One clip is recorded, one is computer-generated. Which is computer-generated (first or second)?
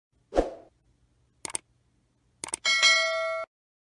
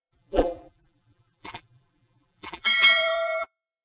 second